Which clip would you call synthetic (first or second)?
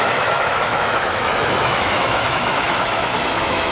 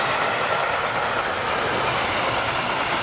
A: first